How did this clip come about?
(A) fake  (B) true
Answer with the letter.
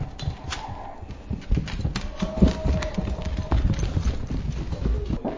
B